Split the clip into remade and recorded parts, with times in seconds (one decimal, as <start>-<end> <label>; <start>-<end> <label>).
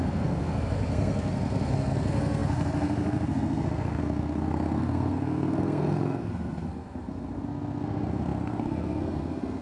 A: 0.0-9.6 remade